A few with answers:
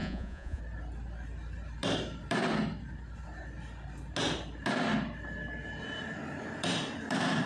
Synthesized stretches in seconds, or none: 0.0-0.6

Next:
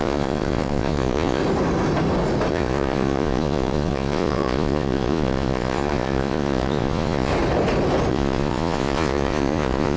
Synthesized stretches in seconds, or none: 0.0-1.4; 2.5-7.3; 8.1-10.0

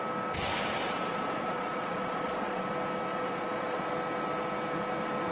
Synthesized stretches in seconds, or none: 0.8-2.6; 3.1-3.8

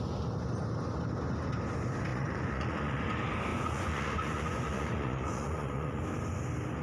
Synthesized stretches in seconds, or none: 2.1-3.0; 3.5-6.0